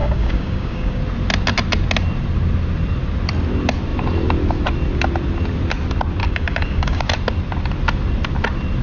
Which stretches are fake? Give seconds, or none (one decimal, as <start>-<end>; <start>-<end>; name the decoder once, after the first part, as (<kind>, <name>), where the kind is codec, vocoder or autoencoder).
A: 0.0-1.0 (codec, DAC); 6.2-7.0